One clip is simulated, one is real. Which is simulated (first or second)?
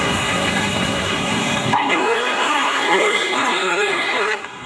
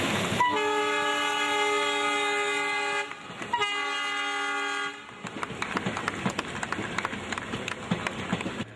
first